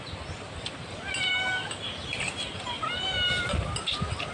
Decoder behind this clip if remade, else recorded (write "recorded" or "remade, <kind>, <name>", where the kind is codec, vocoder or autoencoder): recorded